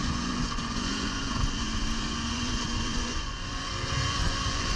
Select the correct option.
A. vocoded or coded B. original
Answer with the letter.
A